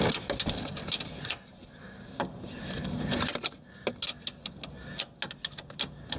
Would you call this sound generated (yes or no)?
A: no